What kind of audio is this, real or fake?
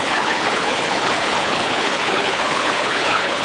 fake